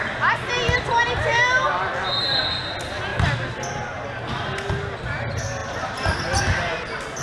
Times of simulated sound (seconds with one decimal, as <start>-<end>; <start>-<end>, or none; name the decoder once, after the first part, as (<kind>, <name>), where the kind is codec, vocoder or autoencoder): none